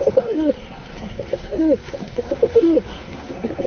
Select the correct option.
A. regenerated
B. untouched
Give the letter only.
A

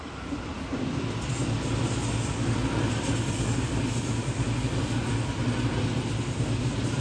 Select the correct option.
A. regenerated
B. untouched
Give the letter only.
B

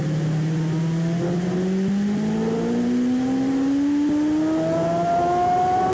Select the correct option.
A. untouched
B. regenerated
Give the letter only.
A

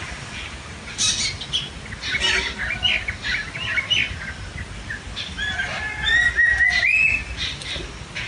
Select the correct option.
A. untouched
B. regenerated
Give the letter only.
A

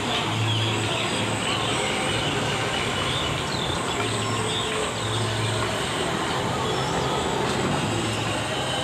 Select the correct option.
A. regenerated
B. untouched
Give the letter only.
B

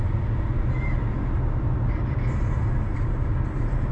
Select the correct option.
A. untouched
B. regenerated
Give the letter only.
A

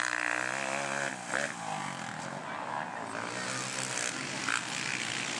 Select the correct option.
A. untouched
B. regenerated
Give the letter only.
A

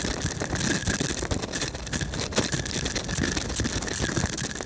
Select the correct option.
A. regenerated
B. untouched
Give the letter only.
B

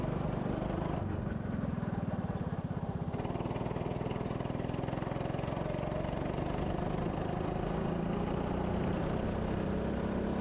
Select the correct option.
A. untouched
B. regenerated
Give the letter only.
A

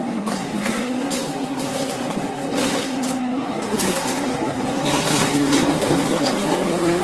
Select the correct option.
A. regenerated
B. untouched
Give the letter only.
A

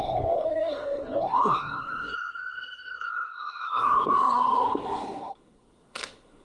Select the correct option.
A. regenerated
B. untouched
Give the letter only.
A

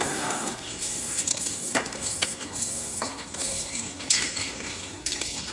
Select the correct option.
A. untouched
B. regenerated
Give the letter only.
B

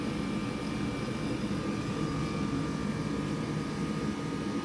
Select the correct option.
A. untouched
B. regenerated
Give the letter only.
A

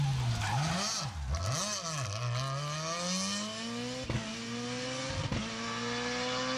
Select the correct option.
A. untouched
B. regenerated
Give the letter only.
A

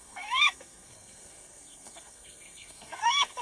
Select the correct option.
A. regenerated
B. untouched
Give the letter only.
A